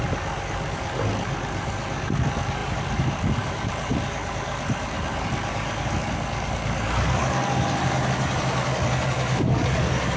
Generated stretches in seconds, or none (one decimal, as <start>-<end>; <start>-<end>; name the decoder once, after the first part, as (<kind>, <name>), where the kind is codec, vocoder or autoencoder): 0.0-10.2 (codec, DAC)